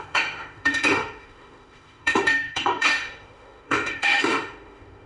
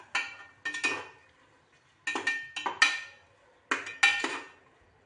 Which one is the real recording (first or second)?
second